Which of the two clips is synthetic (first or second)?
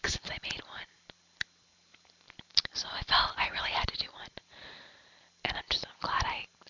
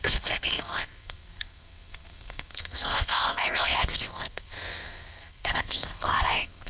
second